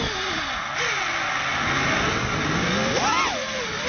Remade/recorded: recorded